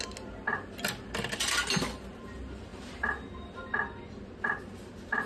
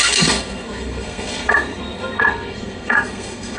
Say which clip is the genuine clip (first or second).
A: first